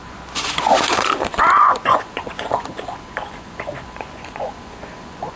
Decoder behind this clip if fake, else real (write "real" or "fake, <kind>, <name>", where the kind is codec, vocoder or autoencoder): fake, vocoder, Vocos